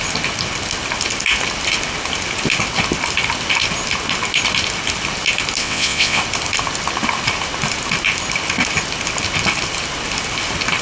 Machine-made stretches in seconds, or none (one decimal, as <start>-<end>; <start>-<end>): 5.6-6.2